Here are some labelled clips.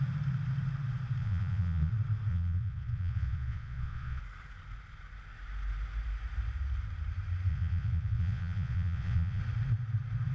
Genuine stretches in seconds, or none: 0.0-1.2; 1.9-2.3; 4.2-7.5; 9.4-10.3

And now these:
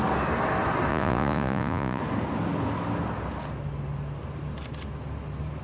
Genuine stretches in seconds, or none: 0.0-0.9; 2.0-5.6

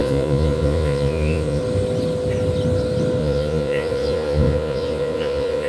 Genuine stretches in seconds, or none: 1.6-3.2